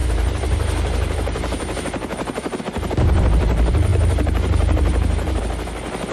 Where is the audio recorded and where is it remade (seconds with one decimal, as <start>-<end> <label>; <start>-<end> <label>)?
0.0-2.6 remade; 2.6-3.9 recorded; 3.9-5.4 remade; 5.4-6.1 recorded